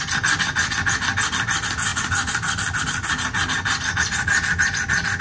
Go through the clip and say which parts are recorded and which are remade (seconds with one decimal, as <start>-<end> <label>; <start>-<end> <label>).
0.0-5.2 recorded